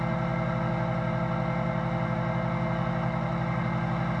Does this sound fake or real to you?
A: real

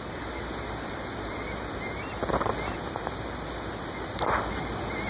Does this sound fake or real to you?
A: real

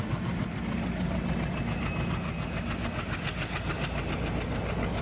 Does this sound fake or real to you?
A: real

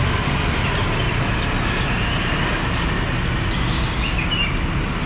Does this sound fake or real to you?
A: real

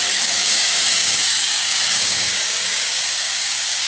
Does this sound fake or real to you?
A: fake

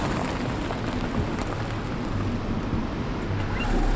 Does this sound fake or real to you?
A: real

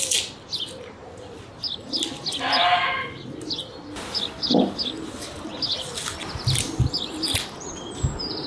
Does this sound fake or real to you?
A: real